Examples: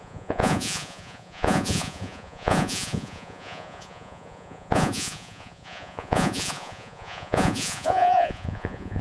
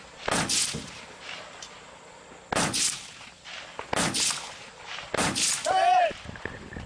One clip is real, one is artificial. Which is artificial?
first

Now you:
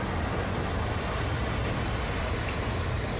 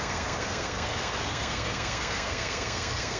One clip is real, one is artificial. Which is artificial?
second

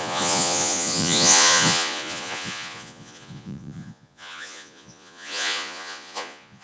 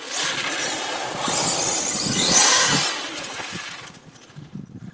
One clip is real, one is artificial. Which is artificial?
first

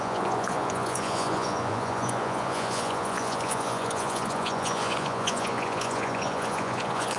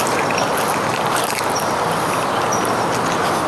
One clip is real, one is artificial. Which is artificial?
first